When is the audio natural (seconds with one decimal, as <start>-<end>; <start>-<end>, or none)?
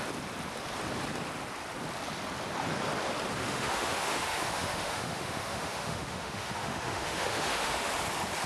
0.0-3.4; 7.9-8.5